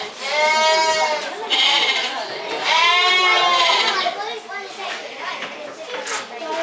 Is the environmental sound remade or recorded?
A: recorded